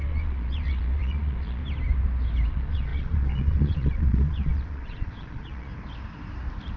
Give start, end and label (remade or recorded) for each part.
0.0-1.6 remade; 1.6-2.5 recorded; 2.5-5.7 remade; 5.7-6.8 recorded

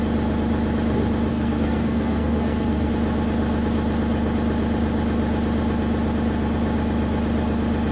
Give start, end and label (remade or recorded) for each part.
0.0-1.3 recorded; 1.3-2.9 remade; 2.9-7.9 recorded

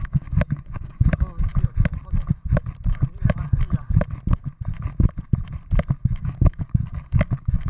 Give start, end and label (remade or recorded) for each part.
0.0-1.5 remade; 1.5-6.1 recorded; 6.1-7.7 remade

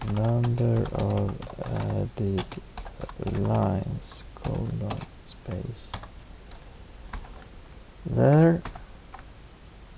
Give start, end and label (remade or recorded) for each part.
0.0-10.0 recorded

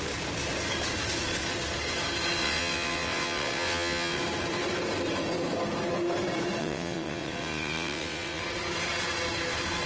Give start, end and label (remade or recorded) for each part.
0.0-2.4 recorded; 2.4-4.2 remade; 4.2-6.6 recorded; 6.6-8.4 remade; 8.4-9.9 recorded

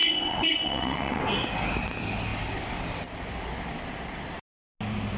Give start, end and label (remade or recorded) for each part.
0.0-1.2 remade; 1.2-5.2 recorded

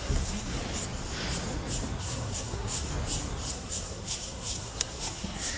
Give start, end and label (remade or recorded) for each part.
0.0-0.6 remade; 0.6-2.0 recorded; 2.0-2.9 remade; 2.9-3.5 recorded; 3.5-5.6 remade